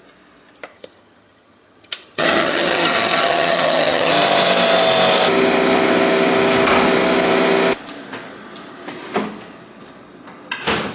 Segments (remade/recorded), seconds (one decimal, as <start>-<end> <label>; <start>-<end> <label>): 0.0-0.7 recorded; 0.7-4.1 remade; 4.1-10.9 recorded